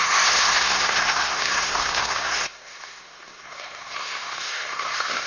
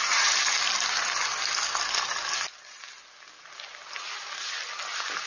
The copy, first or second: first